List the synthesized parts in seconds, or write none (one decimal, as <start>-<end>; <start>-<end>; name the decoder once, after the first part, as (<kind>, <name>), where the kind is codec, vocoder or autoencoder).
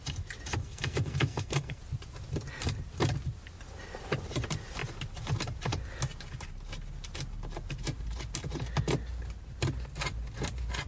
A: 0.6-1.8 (codec, SNAC)